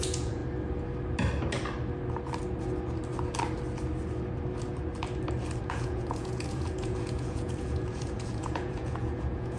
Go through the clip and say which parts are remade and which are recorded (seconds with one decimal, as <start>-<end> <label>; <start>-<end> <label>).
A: 0.0-0.4 remade; 0.4-5.6 recorded; 5.6-9.6 remade